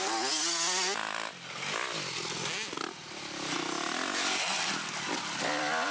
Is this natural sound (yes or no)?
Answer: yes